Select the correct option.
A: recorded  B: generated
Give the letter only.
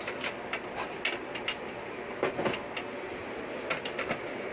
A